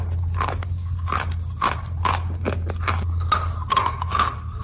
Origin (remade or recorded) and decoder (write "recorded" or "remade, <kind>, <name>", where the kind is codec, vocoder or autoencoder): recorded